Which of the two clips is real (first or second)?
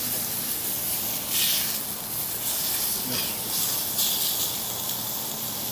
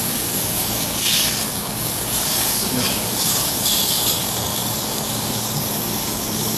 first